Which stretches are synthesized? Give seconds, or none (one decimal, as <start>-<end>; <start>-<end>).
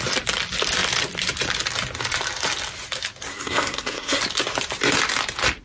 3.3-4.2